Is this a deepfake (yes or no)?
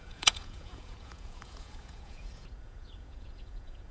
yes